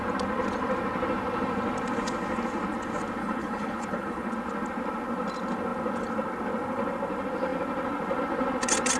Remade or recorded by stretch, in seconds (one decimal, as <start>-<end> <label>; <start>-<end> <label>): 0.0-3.2 recorded; 3.2-4.3 remade; 4.3-9.0 recorded